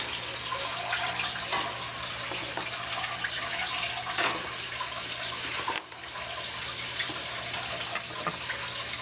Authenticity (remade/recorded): recorded